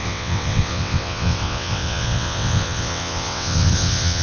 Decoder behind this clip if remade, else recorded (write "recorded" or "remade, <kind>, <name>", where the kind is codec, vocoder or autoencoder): remade, vocoder, WaveNeXt